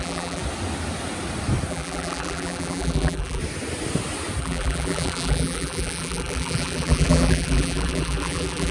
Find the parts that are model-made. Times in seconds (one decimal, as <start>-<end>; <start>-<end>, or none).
0.0-0.4; 1.7-3.4; 4.4-8.7